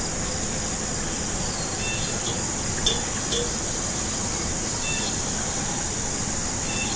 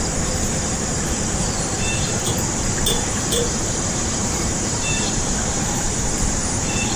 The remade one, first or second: second